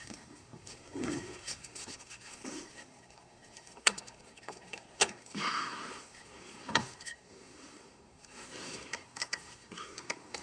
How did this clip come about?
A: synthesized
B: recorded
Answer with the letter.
A